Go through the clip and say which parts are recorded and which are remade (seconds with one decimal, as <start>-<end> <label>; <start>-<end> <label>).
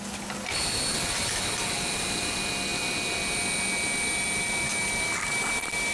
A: 0.0-5.9 recorded